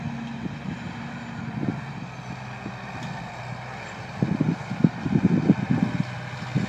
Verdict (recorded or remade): recorded